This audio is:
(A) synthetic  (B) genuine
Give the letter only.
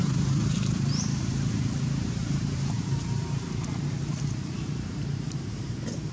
A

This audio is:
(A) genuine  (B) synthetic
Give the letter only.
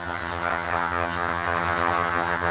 B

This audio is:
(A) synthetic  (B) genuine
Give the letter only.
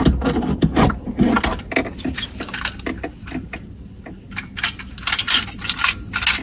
B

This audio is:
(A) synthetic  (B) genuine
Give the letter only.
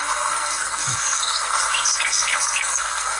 A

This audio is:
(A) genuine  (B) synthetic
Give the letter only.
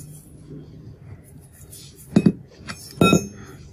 A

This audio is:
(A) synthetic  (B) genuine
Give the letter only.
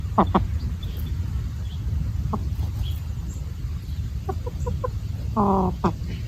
B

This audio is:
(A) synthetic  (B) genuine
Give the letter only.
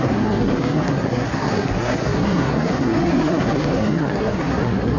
A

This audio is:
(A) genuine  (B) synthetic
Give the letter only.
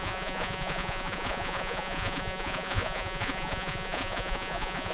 B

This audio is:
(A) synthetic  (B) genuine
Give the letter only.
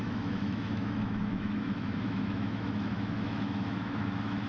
A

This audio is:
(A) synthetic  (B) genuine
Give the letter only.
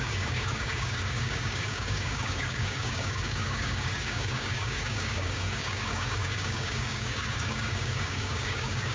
A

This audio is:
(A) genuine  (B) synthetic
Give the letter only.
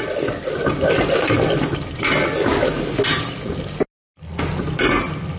A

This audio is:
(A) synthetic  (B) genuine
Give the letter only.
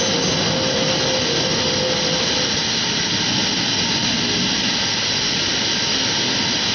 B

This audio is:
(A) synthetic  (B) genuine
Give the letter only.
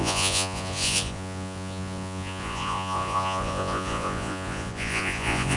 A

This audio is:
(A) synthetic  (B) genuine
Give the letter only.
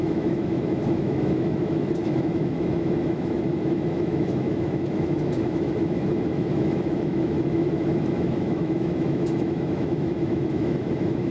A